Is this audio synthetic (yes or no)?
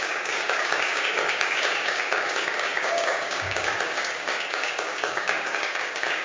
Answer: yes